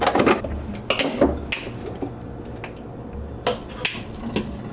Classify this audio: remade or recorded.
recorded